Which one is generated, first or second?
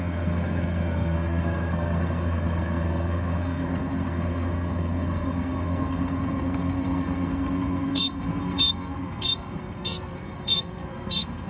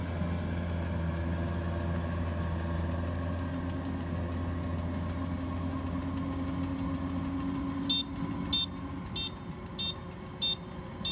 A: first